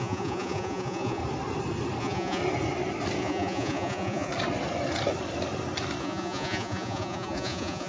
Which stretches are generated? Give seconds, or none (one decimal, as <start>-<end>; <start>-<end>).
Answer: 0.0-1.2; 2.0-2.4; 3.2-4.3; 6.0-7.9